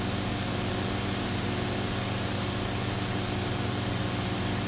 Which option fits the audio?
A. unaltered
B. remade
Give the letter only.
A